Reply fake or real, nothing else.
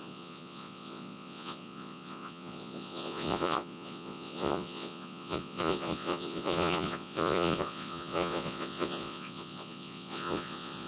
fake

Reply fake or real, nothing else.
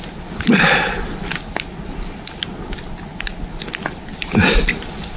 real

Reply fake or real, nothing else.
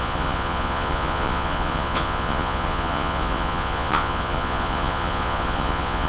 fake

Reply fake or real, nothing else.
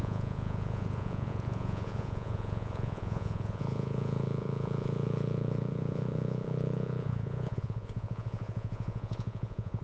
fake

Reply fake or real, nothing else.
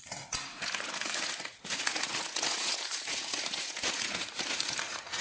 fake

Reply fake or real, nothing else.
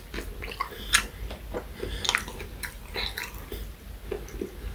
real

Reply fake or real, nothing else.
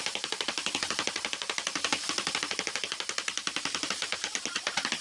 real